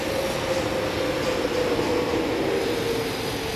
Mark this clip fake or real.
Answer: real